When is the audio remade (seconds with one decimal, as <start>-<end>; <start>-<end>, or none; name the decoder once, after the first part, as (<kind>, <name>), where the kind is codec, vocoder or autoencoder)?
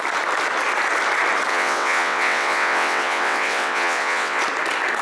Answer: 1.5-4.4 (vocoder, WaveNeXt)